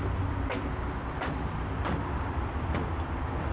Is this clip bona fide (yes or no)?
no